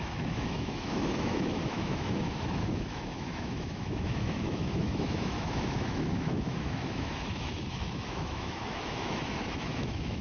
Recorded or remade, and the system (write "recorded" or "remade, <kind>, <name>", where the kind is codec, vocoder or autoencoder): remade, autoencoder, DAC-VAE